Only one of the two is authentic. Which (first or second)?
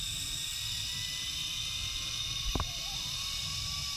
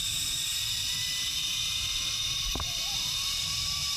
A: first